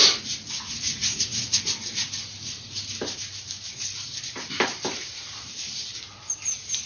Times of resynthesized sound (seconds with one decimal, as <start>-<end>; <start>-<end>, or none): 1.9-6.0

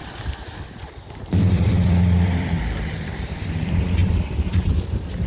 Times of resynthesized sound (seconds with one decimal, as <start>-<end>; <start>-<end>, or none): 0.0-5.3

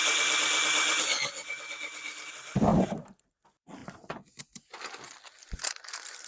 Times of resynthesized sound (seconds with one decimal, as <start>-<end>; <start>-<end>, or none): 2.7-3.4

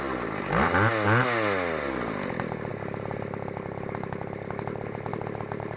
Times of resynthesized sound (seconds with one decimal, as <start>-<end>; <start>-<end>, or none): none

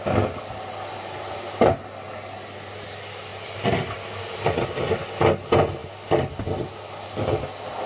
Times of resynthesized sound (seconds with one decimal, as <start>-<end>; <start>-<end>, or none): 3.3-4.1

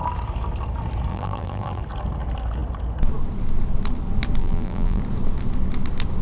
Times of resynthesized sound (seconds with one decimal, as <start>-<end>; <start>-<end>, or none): 1.1-1.8; 4.4-5.0

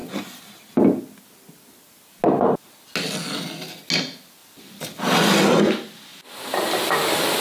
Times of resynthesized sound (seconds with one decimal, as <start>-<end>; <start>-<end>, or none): 0.0-1.0; 4.4-5.3